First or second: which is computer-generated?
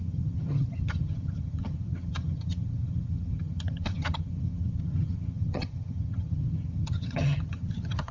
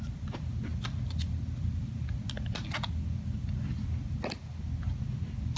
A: first